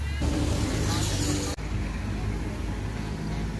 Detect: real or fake real